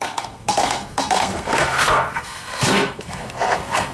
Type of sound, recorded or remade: remade